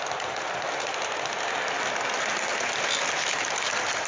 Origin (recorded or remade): recorded